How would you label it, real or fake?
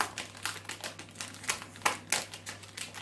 real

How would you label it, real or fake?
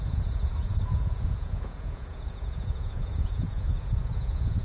fake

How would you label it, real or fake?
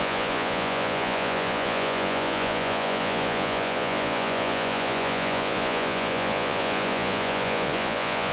fake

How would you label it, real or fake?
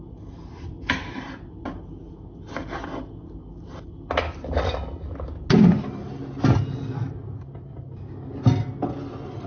real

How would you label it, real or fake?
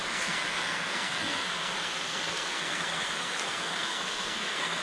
fake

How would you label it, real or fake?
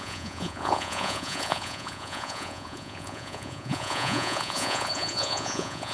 fake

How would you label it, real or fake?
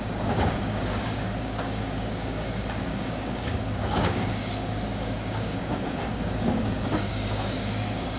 fake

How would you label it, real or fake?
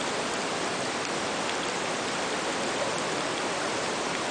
real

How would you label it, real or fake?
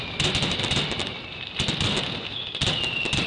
real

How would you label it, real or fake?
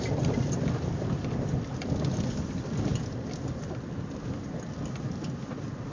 real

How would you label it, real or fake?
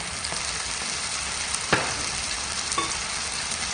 real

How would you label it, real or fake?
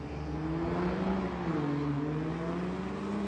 real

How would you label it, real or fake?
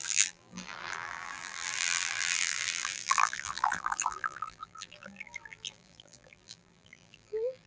fake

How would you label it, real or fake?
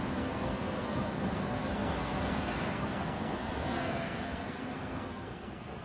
fake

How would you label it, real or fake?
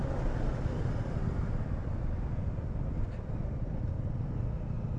real